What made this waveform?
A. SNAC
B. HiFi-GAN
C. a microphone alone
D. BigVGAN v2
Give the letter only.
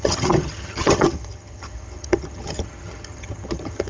B